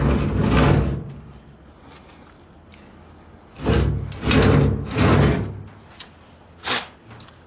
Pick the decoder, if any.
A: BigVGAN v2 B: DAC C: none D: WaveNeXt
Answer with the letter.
C